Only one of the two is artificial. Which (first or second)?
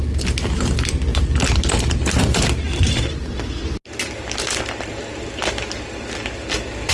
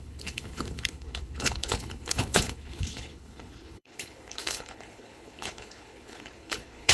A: second